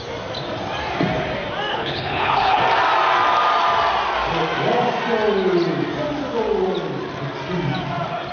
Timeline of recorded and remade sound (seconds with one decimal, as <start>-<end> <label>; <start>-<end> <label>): 0.0-1.7 recorded; 1.7-2.6 remade; 2.6-8.3 recorded